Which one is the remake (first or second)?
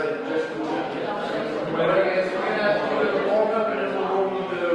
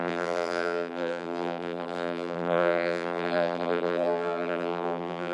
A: second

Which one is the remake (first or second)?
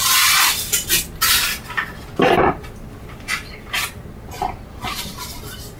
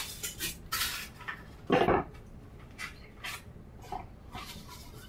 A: second